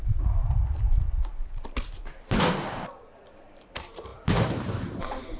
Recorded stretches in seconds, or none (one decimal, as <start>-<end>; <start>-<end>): 0.4-3.6